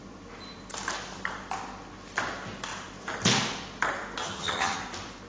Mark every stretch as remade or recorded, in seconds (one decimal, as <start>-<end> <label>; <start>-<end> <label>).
0.0-4.2 recorded; 4.2-4.8 remade; 4.8-5.3 recorded